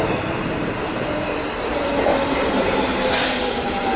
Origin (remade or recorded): remade